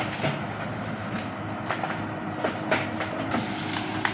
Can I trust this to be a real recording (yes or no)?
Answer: yes